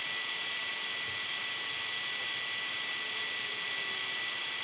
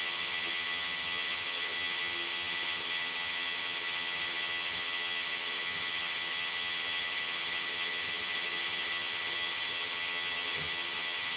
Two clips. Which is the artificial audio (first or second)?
second